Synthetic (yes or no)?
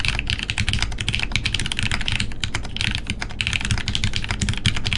no